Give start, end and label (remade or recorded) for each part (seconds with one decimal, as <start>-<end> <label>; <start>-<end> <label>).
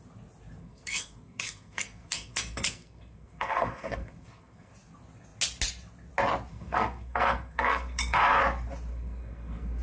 0.0-0.6 recorded; 0.6-4.7 remade; 4.7-6.5 recorded; 6.5-8.4 remade; 8.4-8.9 recorded; 8.9-9.8 remade